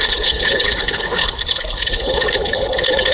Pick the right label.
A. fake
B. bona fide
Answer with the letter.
A